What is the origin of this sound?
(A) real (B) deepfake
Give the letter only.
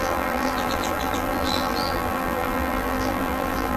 B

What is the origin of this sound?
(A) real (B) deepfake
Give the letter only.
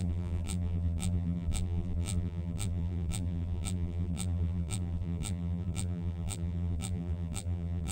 B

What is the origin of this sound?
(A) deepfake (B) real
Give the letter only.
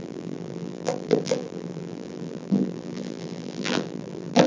A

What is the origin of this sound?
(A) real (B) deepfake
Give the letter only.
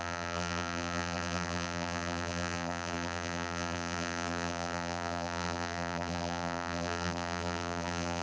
B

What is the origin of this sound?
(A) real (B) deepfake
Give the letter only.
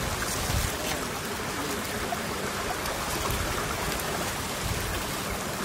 A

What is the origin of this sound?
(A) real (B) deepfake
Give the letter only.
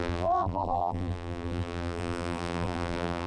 B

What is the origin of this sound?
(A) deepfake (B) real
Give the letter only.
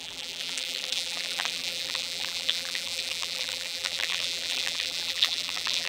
A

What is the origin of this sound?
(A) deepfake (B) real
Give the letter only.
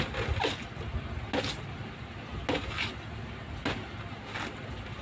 B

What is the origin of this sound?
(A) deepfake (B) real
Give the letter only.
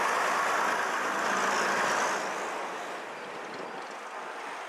B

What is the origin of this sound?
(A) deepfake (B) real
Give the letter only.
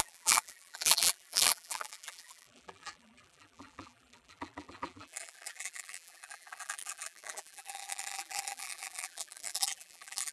A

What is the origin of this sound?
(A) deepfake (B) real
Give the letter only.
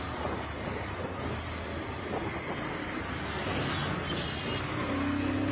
B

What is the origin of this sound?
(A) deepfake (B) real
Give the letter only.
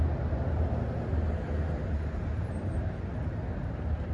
B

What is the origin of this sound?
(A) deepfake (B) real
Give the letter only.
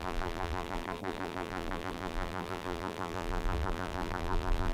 A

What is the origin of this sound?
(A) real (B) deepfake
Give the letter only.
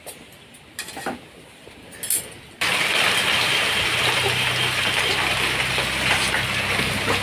A